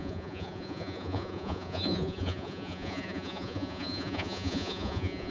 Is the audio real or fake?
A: fake